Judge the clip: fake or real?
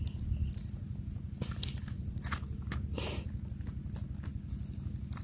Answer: real